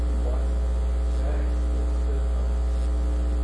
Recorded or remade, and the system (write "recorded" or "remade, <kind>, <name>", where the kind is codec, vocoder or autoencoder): recorded